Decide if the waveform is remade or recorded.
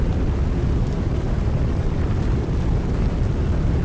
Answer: recorded